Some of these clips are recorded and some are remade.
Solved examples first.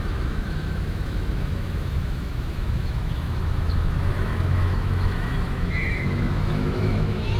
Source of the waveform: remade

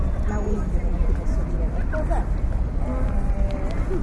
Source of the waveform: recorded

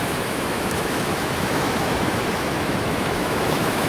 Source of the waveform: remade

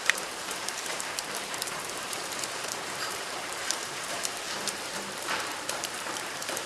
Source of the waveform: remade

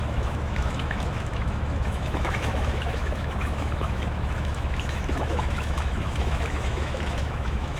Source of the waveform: remade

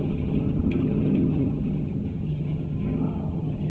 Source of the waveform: remade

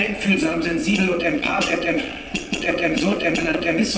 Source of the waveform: remade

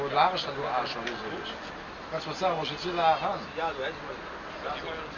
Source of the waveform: recorded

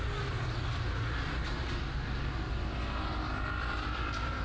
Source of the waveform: recorded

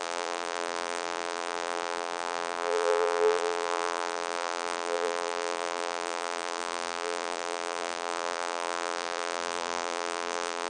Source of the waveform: remade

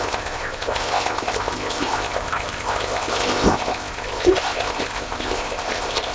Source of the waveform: remade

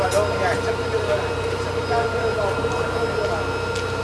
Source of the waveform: recorded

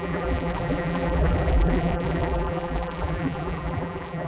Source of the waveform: remade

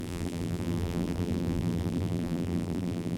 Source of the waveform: remade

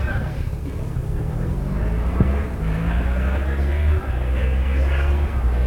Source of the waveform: remade